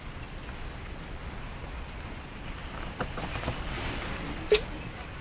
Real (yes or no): yes